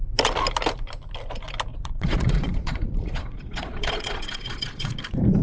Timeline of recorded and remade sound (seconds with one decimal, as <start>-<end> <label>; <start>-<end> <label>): 0.0-1.7 recorded; 1.7-4.9 remade; 4.9-5.4 recorded